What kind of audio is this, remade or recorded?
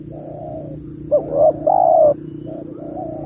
recorded